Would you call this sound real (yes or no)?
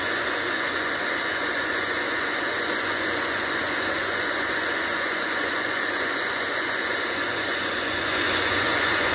no